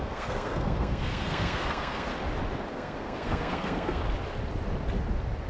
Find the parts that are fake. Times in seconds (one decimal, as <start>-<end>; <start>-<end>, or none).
0.0-2.1; 2.7-4.0